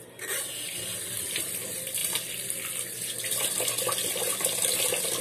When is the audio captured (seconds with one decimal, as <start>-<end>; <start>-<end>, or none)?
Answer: 2.0-5.2